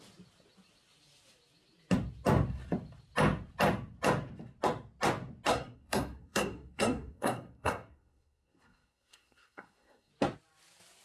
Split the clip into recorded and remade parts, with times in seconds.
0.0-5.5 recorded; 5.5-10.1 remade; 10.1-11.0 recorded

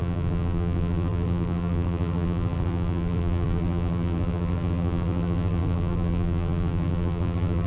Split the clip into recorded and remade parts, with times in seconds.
0.0-7.7 remade

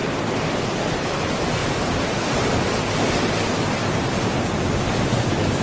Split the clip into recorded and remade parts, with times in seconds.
0.0-1.6 recorded; 1.6-2.2 remade; 2.2-5.6 recorded

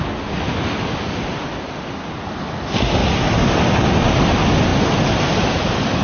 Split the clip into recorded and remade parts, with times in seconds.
0.0-3.0 recorded; 3.0-3.6 remade; 3.6-6.0 recorded

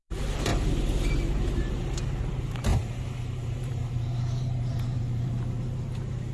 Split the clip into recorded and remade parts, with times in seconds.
0.0-6.3 remade

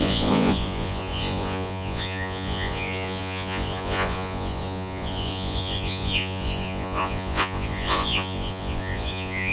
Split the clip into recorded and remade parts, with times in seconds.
0.0-9.5 remade

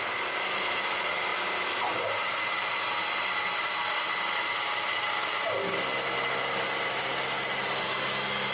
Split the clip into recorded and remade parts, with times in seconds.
0.0-8.5 recorded

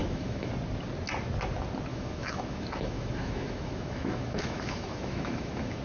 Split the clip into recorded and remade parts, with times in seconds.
0.0-0.5 remade; 0.5-1.9 recorded; 1.9-5.8 remade